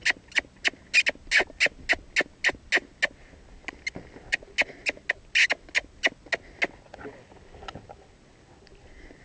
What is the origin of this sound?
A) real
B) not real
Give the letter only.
A